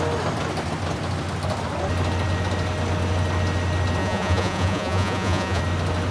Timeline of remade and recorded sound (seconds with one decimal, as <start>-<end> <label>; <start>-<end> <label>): 0.0-4.0 recorded; 4.0-5.6 remade; 5.6-6.1 recorded